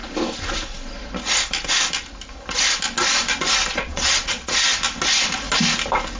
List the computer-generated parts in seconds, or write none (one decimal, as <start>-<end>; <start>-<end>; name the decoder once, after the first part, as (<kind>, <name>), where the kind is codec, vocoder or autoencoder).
3.7-4.7 (vocoder, Vocos)